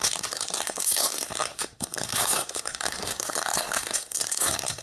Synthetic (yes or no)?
yes